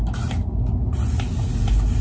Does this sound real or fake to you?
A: real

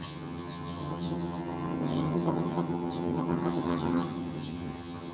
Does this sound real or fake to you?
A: fake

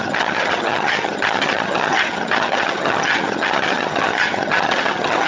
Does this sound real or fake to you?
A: fake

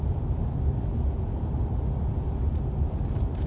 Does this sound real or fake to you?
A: real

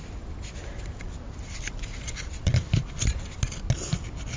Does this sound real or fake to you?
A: real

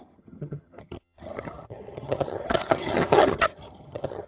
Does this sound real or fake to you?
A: fake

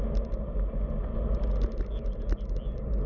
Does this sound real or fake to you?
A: real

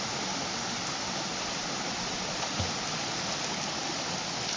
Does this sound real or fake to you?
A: real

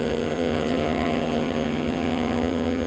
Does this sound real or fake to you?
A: fake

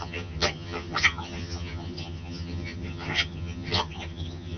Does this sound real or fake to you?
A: fake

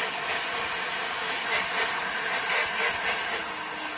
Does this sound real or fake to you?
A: real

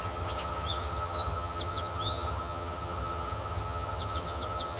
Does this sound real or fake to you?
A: fake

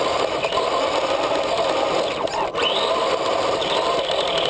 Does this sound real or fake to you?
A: real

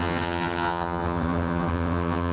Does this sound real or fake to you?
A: fake